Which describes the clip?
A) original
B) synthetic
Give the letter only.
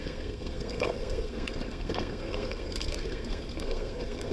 B